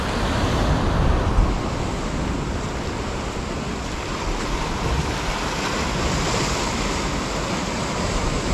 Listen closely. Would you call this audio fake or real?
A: real